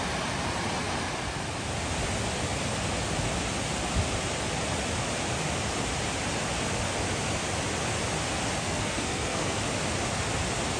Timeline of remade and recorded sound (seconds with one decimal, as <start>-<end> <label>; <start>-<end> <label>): 0.0-8.6 recorded; 8.6-9.6 remade; 9.6-10.8 recorded